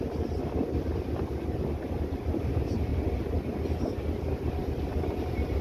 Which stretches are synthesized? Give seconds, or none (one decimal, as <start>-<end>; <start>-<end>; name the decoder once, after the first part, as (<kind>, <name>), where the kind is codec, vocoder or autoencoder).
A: none